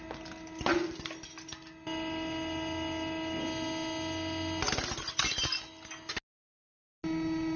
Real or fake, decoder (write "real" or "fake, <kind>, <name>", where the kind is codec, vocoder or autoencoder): real